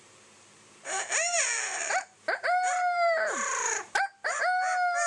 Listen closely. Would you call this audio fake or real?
fake